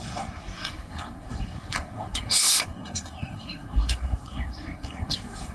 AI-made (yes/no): yes